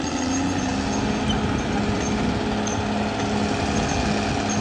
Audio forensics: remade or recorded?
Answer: recorded